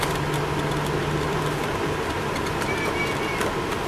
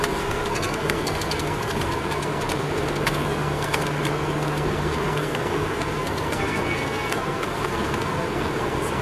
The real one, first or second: first